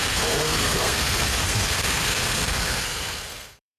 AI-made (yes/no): yes